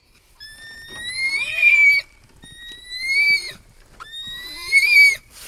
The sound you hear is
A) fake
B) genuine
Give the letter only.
A